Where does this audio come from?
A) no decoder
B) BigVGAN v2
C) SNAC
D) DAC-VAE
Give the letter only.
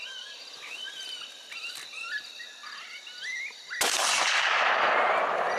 A